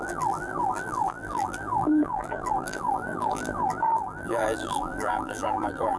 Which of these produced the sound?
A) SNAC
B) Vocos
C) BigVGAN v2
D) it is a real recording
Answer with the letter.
C